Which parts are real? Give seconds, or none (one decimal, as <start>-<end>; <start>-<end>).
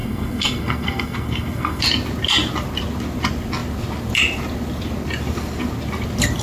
1.8-6.4